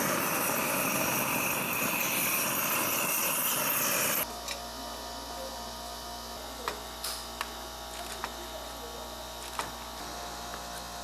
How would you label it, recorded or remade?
recorded